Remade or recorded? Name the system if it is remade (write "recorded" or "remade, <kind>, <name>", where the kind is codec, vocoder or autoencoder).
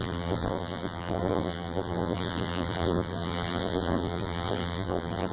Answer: remade, vocoder, BigVGAN v2